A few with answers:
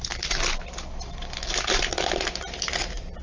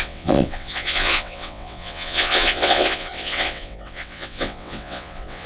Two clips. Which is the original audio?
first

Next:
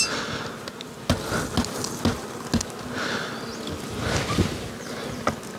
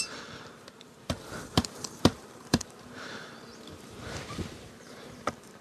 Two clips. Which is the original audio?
first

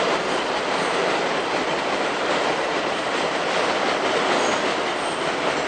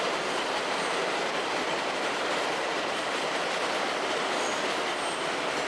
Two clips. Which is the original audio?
first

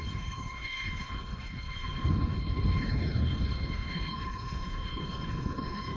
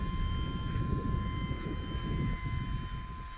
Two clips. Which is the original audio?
second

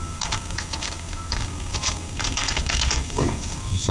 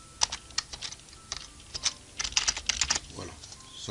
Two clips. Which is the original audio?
second